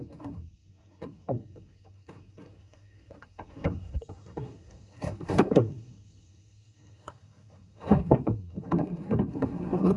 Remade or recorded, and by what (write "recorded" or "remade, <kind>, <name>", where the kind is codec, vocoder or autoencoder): remade, codec, SNAC